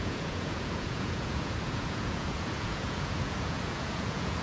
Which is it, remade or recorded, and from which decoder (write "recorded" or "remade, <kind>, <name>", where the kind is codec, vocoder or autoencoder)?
remade, vocoder, Vocos